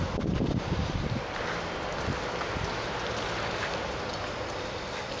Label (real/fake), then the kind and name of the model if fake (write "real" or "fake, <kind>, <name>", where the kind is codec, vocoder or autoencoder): real